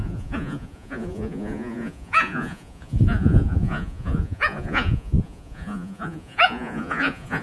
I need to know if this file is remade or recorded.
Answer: remade